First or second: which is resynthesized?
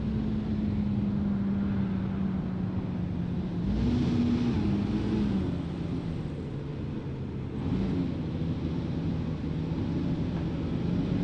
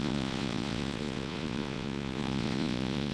second